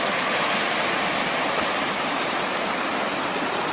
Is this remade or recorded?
recorded